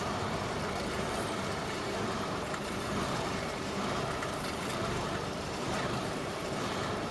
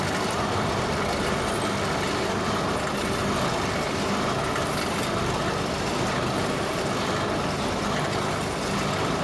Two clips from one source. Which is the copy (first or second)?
first